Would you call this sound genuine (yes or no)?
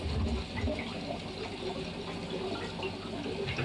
yes